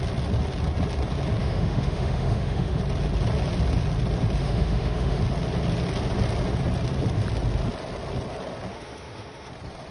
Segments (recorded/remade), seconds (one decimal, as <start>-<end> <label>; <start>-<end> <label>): 0.0-1.4 recorded; 1.4-2.8 remade; 2.8-4.4 recorded; 4.4-5.2 remade; 5.2-8.7 recorded; 8.7-9.5 remade; 9.5-9.9 recorded